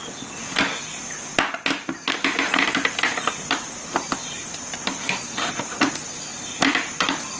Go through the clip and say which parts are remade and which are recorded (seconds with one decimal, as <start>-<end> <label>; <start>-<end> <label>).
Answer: 0.0-7.4 recorded